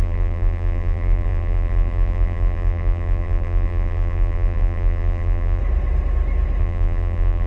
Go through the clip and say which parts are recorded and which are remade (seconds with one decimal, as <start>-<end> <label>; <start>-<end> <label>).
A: 0.0-5.6 remade; 5.6-6.6 recorded; 6.6-7.5 remade